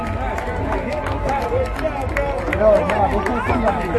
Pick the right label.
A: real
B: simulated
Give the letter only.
A